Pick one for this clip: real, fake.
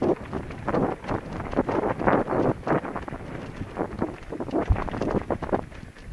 real